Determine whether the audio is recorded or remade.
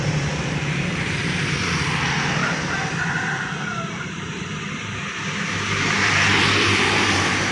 remade